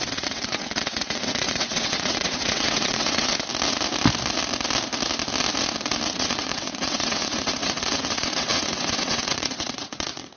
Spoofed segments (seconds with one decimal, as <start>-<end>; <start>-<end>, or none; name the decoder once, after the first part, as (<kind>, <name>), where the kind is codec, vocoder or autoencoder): 0.0-3.3 (vocoder, WaveNeXt); 6.1-10.4